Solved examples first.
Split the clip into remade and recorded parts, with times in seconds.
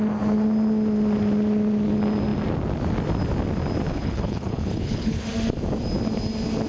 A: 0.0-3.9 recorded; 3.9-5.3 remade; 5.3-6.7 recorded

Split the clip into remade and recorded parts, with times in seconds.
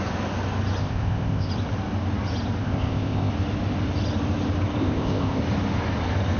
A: 0.0-0.8 recorded; 0.8-1.5 remade; 1.5-2.6 recorded; 2.6-3.3 remade; 3.3-4.8 recorded; 4.8-5.4 remade; 5.4-6.4 recorded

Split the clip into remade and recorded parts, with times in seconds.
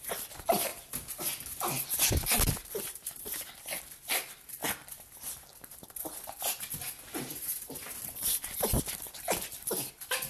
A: 0.0-10.3 recorded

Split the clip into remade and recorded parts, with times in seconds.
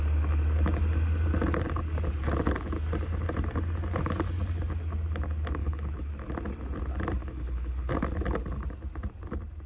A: 0.0-5.6 recorded; 5.6-6.1 remade; 6.1-7.2 recorded; 7.2-7.9 remade; 7.9-9.7 recorded